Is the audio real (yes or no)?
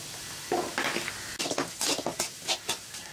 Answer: yes